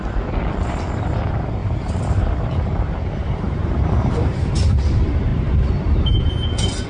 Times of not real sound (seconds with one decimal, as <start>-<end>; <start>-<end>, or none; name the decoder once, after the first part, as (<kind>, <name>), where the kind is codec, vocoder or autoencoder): 1.6-4.5 (vocoder, BigVGAN v2); 5.3-6.3